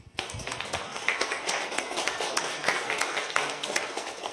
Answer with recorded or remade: remade